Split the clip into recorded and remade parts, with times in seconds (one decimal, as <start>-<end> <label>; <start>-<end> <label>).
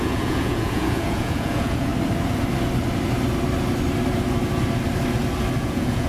0.0-1.9 remade; 1.9-5.6 recorded; 5.6-6.1 remade